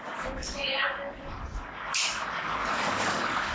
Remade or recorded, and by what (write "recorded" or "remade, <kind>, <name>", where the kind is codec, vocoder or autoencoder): remade, codec, DAC